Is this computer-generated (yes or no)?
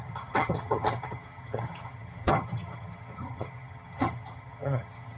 yes